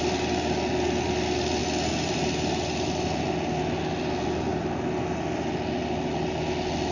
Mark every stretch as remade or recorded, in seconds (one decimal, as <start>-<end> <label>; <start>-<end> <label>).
0.0-6.9 recorded